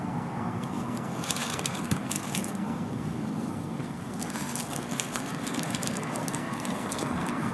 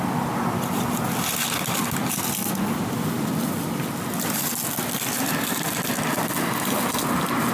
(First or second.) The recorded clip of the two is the second